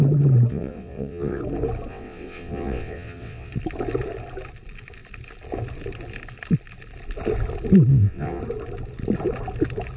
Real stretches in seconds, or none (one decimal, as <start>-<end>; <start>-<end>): 0.0-0.5; 1.4-1.9; 3.5-7.9; 8.4-10.0